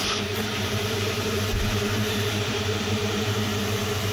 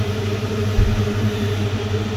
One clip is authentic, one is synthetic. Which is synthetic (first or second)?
first